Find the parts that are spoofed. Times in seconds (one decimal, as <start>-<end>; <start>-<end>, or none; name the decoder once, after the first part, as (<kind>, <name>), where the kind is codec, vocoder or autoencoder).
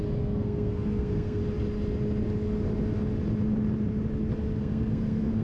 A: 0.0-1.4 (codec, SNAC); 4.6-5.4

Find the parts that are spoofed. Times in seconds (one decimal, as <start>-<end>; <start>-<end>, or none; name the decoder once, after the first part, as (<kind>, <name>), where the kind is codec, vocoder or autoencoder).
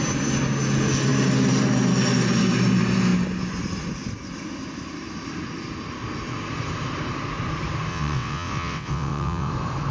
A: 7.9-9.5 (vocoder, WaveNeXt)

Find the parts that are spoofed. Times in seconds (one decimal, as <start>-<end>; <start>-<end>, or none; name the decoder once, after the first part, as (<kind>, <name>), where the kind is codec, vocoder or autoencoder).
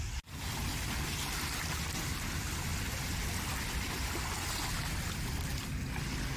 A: none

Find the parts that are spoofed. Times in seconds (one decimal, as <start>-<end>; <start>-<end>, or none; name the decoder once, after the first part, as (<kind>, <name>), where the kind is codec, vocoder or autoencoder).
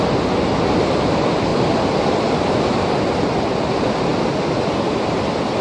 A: none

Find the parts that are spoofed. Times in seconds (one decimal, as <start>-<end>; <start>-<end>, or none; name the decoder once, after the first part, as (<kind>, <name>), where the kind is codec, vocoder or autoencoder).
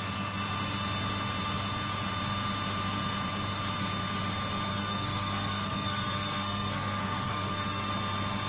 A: 4.7-7.9 (codec, SNAC)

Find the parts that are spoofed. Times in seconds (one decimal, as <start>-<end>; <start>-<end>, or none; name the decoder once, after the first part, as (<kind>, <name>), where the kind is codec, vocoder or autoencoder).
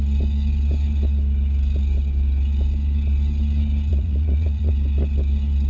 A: 3.9-4.7 (vocoder, Vocos)